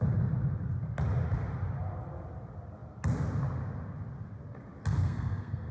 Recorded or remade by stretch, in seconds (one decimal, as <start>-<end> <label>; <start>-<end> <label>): 0.0-5.0 recorded; 5.0-5.7 remade